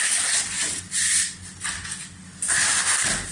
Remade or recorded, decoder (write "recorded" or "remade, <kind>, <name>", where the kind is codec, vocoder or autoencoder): recorded